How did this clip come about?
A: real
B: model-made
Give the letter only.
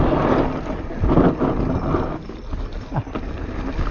A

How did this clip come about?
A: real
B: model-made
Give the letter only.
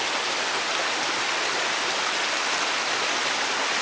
A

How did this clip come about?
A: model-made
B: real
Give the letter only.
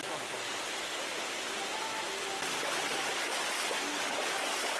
B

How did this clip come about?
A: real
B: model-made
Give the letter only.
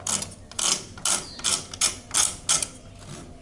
A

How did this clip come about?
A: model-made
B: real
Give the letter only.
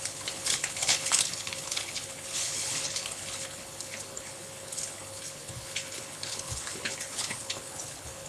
A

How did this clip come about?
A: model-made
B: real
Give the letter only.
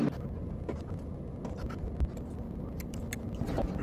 B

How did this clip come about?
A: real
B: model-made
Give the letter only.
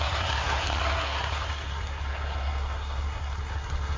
B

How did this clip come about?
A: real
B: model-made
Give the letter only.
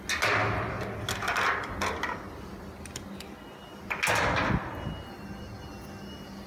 A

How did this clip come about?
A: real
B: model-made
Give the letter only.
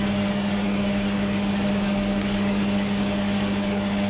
B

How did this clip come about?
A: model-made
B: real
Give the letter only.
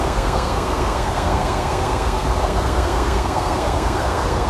A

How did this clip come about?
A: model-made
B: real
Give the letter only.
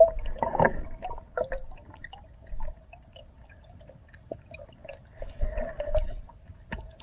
B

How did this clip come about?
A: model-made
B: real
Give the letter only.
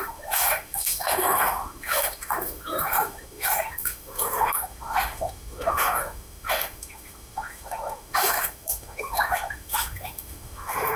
A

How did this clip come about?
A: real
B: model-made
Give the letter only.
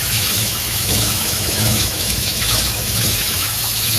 B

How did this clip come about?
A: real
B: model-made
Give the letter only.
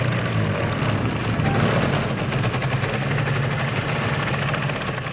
A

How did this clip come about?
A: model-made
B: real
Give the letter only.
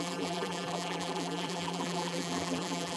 A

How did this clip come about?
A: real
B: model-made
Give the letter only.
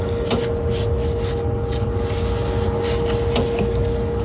A